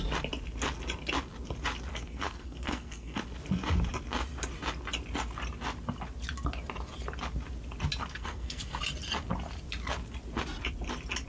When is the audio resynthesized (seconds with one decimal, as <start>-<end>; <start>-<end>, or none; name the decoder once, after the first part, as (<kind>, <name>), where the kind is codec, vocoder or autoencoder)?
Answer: 1.9-3.2 (codec, SNAC); 8.0-8.8